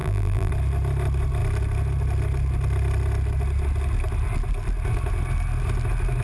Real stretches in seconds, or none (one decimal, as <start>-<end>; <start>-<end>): 0.5-6.2